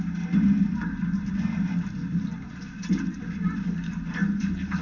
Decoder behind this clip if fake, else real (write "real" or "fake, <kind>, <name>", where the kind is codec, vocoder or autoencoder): real